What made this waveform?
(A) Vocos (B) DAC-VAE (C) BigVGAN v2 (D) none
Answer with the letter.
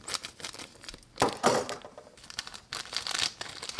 D